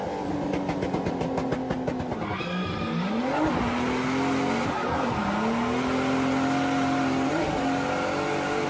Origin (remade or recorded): recorded